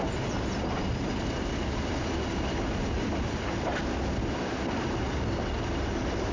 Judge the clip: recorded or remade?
recorded